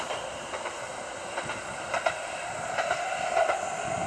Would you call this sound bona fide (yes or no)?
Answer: yes